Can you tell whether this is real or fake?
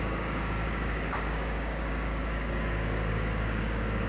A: fake